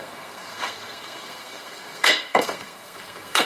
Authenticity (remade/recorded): remade